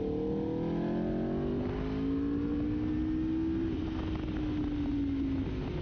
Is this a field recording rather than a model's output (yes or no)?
yes